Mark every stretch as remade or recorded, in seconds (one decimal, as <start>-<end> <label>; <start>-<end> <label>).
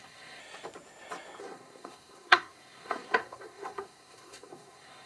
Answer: 0.0-0.4 remade; 0.4-1.4 recorded; 1.4-5.1 remade